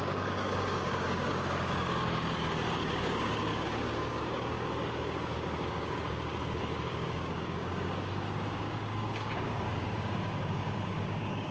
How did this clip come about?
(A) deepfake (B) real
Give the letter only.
A